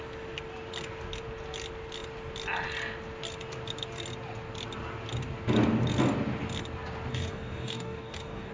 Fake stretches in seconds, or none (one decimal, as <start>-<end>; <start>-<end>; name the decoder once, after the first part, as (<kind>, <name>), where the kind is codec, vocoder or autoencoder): 7.1-8.5 (codec, DAC)